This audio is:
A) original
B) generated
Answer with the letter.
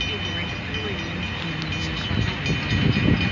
A